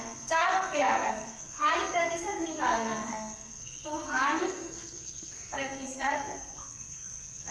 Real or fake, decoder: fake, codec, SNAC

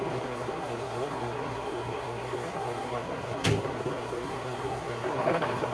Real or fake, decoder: fake, codec, SNAC